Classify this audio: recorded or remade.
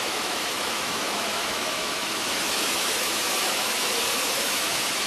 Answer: remade